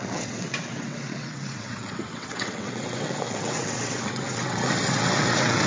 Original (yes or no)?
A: no